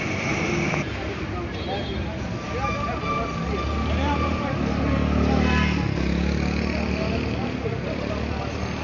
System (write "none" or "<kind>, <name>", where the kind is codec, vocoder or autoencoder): none